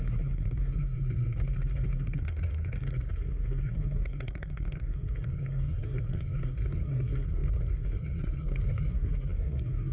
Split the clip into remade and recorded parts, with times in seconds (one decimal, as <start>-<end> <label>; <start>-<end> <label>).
0.0-9.9 remade